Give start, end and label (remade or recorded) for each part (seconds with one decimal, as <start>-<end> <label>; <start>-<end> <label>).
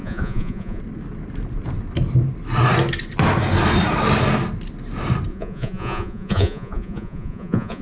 0.0-0.8 remade; 0.8-5.3 recorded; 5.3-7.8 remade